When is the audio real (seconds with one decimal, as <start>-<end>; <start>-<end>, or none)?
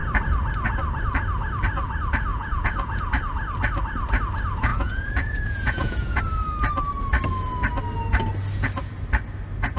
0.0-2.3; 3.1-4.7; 6.2-9.8